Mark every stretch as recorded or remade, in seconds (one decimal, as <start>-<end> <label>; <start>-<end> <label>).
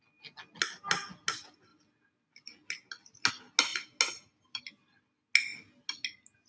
0.0-6.5 recorded